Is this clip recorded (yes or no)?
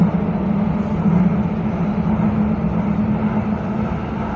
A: yes